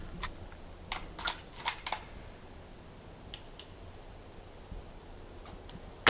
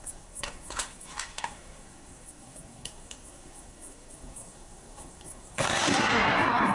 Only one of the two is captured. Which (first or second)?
first